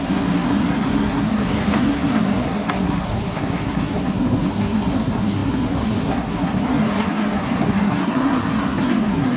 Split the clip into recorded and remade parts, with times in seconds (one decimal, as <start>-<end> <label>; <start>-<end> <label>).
0.0-9.4 remade